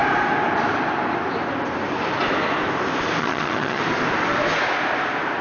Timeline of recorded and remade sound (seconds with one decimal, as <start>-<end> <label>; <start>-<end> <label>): 0.0-3.2 recorded; 3.2-3.8 remade; 3.8-5.4 recorded